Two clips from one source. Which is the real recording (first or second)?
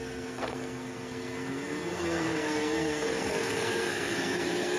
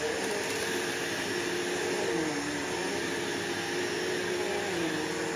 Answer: second